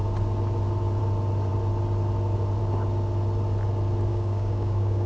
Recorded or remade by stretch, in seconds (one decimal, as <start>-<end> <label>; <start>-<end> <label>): 0.0-4.1 recorded; 4.1-5.1 remade